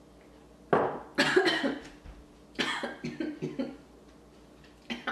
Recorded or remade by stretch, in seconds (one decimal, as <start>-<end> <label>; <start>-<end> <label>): 0.0-5.1 recorded